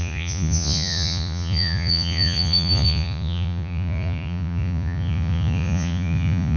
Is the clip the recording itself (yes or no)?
no